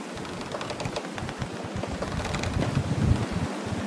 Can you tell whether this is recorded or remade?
recorded